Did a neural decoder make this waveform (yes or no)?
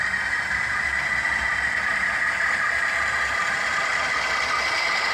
no